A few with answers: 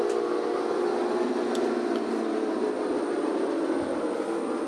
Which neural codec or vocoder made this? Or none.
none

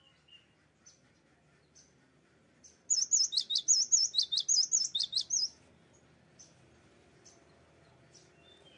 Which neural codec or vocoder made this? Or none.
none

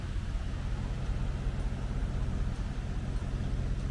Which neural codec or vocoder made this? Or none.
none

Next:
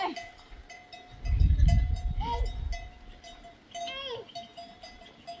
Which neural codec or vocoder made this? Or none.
none